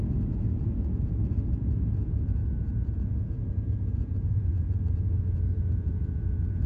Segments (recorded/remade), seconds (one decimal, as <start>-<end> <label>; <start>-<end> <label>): 0.0-6.7 remade